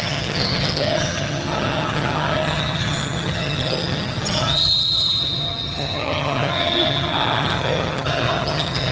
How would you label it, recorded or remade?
remade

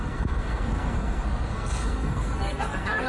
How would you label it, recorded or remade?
remade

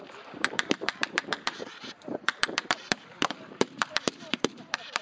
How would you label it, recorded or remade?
remade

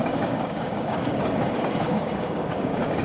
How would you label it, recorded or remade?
remade